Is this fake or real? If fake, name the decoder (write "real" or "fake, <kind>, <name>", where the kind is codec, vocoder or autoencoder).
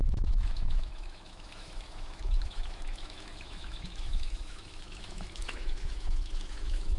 fake, autoencoder, DAC-VAE